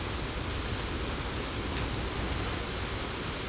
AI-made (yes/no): no